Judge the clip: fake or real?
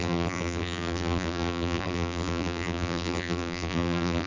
fake